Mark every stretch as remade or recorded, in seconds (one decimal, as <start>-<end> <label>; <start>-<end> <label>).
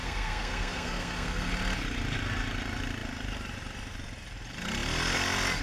0.0-1.5 remade; 1.5-5.6 recorded